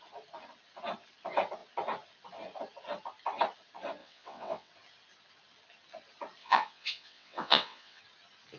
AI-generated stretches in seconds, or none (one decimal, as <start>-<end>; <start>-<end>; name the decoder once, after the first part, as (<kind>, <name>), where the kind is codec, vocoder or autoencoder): 4.0-4.7 (vocoder, WaveNeXt); 6.4-8.0